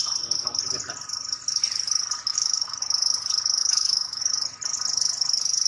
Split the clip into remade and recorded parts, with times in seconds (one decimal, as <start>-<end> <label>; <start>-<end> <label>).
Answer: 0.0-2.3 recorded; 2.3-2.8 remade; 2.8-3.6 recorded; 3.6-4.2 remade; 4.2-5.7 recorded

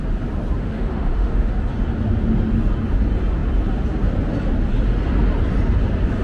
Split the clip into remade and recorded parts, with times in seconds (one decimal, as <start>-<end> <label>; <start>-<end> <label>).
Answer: 0.0-0.6 recorded; 0.6-1.5 remade; 1.5-6.2 recorded

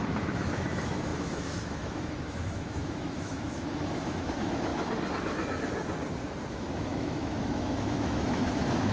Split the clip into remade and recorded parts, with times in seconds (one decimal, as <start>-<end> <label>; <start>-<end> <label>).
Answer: 0.0-4.7 remade; 4.7-6.5 recorded; 6.5-8.9 remade